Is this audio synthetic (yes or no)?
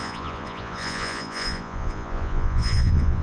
yes